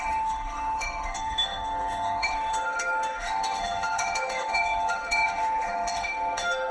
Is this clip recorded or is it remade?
remade